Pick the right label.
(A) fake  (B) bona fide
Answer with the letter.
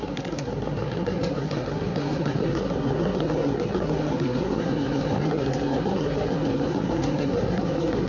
A